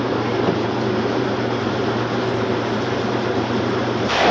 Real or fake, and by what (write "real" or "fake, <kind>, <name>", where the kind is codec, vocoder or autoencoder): fake, vocoder, BigVGAN v2